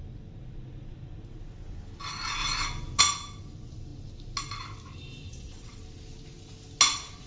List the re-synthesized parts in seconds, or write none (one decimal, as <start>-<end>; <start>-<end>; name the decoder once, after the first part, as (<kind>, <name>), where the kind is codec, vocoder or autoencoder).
5.3-5.8 (vocoder, WaveNeXt)